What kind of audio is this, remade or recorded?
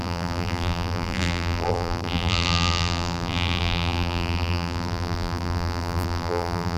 remade